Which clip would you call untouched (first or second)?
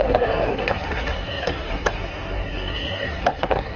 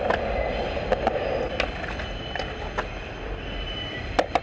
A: second